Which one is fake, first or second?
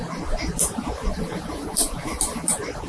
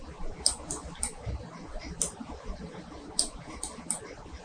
first